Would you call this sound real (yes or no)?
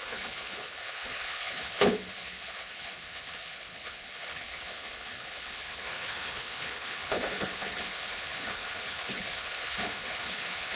no